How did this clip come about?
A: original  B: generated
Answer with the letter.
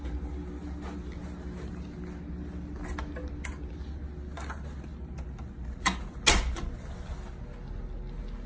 A